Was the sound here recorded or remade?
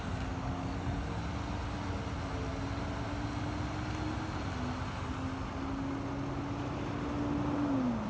recorded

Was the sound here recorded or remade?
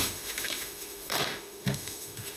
remade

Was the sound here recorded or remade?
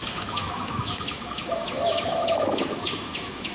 remade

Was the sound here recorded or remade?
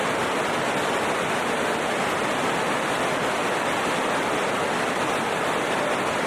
recorded